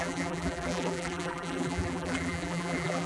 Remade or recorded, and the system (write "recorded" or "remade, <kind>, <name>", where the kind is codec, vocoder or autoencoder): remade, vocoder, BigVGAN v2